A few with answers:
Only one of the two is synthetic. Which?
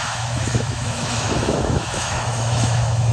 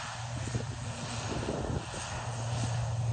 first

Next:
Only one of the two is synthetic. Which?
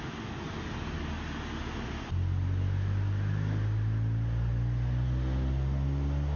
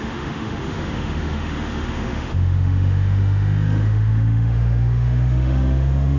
second